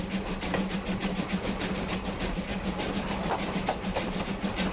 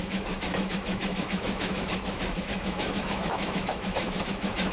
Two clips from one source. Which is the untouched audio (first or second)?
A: first